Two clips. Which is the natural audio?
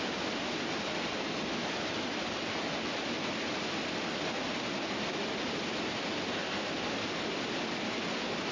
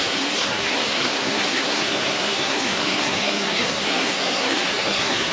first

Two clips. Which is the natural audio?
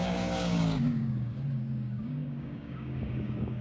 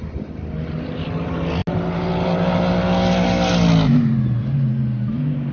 second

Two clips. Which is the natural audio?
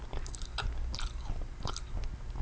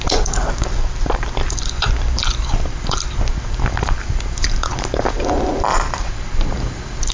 first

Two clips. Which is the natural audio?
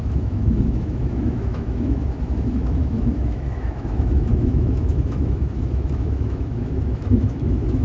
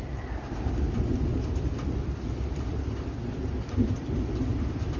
second